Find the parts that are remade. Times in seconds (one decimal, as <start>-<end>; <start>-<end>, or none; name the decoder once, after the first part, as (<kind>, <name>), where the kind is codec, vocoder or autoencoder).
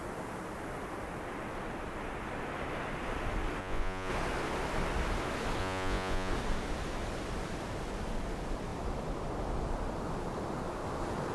3.6-4.1 (vocoder, Vocos); 5.6-6.3